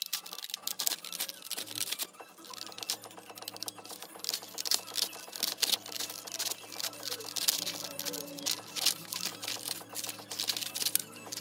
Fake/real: real